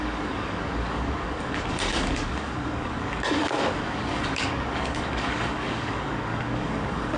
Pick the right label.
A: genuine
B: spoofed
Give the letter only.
B